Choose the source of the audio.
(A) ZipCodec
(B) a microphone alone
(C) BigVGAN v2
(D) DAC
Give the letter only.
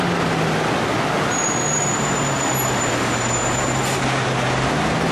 B